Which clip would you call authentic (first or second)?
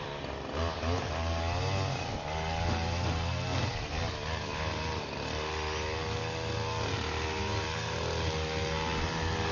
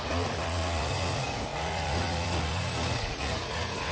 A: first